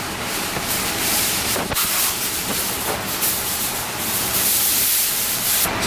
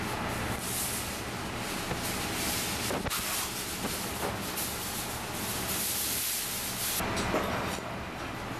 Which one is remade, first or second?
first